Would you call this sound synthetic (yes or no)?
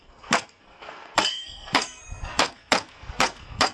yes